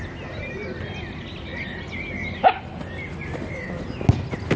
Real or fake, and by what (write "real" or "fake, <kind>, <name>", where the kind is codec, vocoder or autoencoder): real